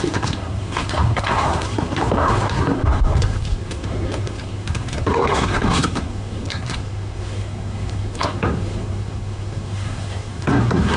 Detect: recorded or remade remade